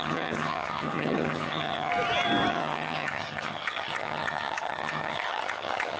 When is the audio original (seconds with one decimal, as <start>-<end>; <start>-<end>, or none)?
1.9-2.5